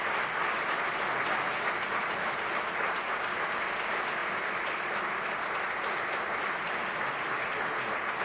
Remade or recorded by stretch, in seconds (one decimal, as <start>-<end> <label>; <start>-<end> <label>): 0.0-8.2 recorded